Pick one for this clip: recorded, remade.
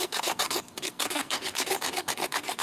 remade